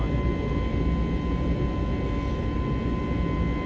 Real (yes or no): yes